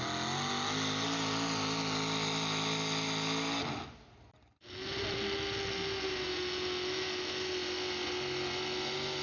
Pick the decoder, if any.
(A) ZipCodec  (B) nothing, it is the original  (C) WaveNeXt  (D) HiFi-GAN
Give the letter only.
B